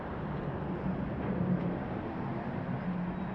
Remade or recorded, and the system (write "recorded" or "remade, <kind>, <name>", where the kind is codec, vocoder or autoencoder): recorded